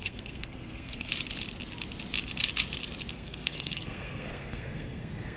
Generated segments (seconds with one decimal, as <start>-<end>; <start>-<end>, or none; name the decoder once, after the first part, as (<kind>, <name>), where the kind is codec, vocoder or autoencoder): 0.0-1.1 (codec, SNAC); 3.1-5.4